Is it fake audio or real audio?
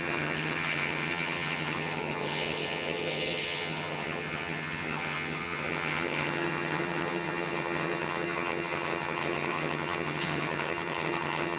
fake